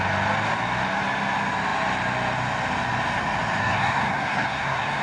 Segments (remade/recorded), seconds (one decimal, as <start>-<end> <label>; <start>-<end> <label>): 0.0-3.6 recorded; 3.6-5.0 remade